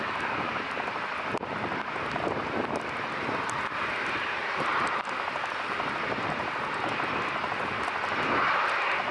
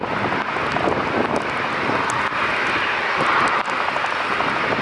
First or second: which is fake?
first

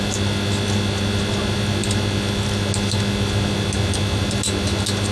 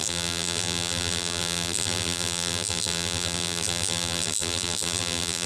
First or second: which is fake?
second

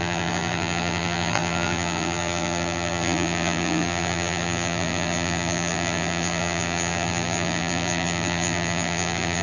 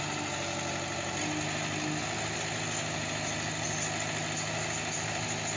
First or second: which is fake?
first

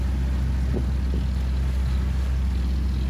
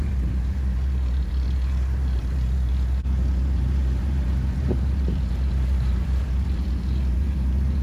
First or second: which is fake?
second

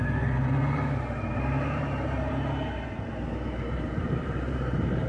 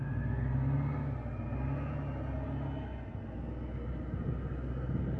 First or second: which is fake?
first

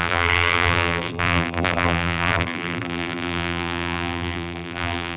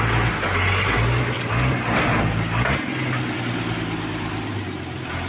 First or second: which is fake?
first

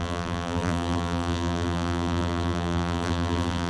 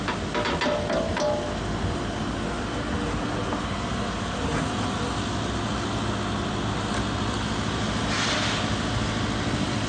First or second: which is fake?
first